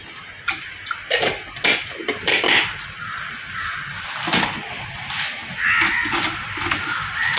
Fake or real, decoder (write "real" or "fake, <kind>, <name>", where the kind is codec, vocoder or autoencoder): real